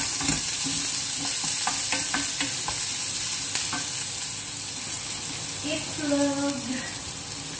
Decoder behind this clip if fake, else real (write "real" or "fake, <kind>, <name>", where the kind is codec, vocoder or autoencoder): real